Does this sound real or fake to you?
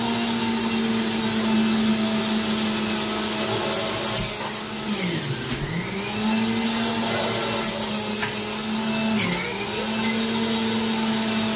real